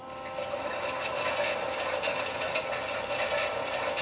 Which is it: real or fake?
real